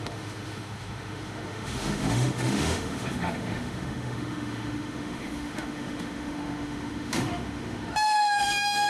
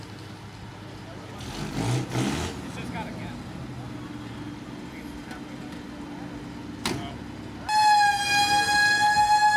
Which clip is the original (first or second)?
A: second